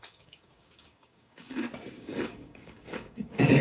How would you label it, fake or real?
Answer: fake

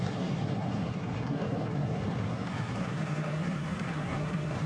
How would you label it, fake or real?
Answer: fake